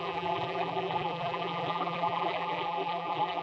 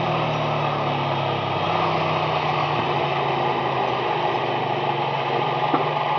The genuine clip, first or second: second